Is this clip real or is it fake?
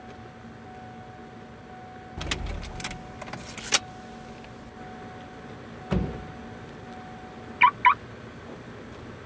real